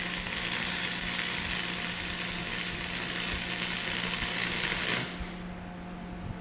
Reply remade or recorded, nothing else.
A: recorded